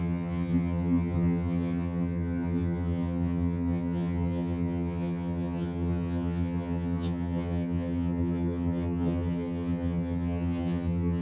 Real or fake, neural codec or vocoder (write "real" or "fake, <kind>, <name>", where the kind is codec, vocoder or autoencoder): fake, vocoder, HiFi-GAN